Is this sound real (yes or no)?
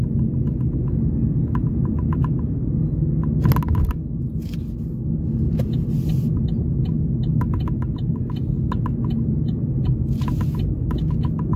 yes